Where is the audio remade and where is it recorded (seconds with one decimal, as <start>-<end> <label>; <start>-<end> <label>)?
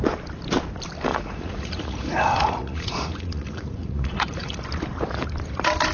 0.0-1.1 recorded; 1.1-4.6 remade; 4.6-5.9 recorded